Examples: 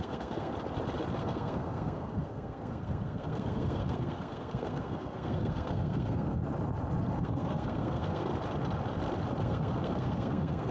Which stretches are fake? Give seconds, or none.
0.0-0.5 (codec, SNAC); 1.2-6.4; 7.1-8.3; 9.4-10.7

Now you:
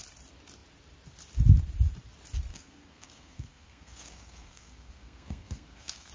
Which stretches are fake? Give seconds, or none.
2.5-6.1 (codec, SNAC)

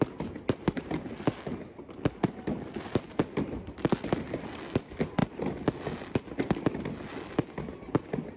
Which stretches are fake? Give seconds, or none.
none

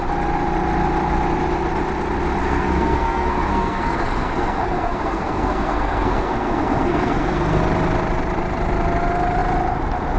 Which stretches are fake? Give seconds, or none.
2.4-7.6 (codec, SNAC)

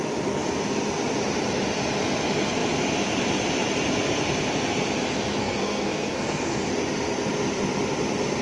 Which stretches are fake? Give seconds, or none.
5.4-6.6 (codec, SNAC)

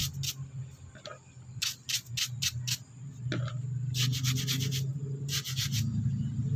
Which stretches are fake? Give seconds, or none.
none

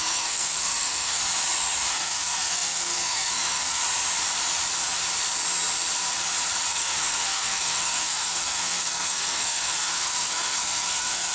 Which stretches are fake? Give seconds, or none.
0.0-1.2 (codec, SNAC); 1.9-3.8; 6.7-11.3

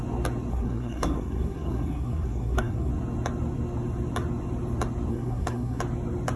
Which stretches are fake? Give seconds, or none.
0.5-2.9 (codec, SNAC); 5.1-5.8